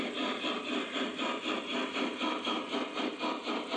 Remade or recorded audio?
recorded